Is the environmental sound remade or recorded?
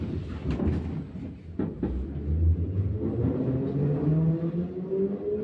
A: recorded